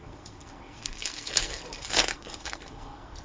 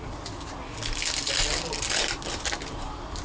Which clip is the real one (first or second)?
second